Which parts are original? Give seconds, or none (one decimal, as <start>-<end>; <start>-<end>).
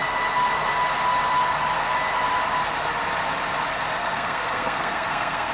0.0-4.0